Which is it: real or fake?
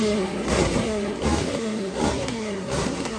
fake